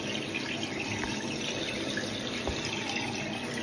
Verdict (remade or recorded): recorded